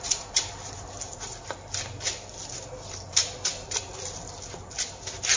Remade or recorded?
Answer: recorded